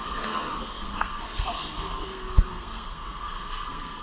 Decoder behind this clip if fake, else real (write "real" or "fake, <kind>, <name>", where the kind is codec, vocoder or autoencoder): fake, codec, SNAC